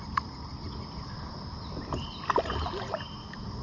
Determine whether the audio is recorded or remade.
recorded